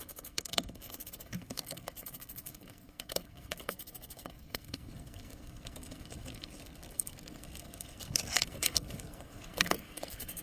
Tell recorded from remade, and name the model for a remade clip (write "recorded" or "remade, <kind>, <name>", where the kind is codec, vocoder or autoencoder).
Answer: remade, codec, SNAC